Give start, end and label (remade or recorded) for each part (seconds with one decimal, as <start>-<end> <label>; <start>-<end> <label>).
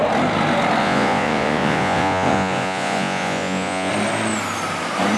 0.0-0.8 recorded; 0.8-3.9 remade; 3.9-5.2 recorded